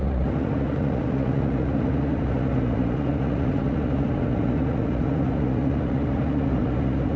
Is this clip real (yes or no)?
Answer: no